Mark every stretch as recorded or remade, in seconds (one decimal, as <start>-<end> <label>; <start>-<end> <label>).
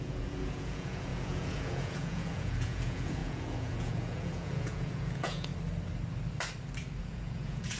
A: 0.0-5.5 remade; 5.5-7.0 recorded; 7.0-7.8 remade